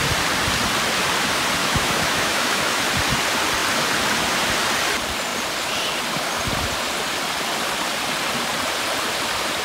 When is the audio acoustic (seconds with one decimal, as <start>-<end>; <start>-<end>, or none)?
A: 0.0-1.6; 2.8-9.6